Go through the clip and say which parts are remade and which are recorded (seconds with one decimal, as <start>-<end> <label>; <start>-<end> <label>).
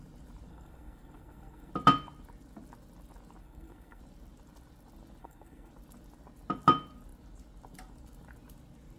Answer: 0.0-0.5 recorded; 0.5-1.7 remade; 1.7-3.4 recorded; 3.4-4.0 remade; 4.0-5.2 recorded; 5.2-5.7 remade; 5.7-9.0 recorded